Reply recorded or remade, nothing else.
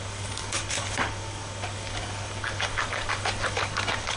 remade